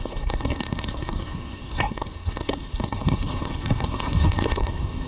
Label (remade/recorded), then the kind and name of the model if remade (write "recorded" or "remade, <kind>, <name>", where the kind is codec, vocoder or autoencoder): remade, codec, SNAC